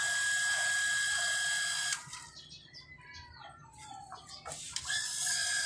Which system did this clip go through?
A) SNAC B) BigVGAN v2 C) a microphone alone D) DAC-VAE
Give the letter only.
C